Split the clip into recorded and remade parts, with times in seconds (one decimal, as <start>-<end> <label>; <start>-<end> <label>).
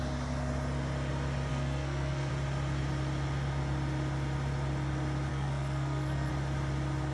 0.0-1.5 recorded; 1.5-2.3 remade; 2.3-5.3 recorded; 5.3-6.3 remade; 6.3-7.1 recorded